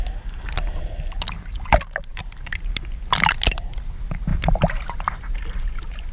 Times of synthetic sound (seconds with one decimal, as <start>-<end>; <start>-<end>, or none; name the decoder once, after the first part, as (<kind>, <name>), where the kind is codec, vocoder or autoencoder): none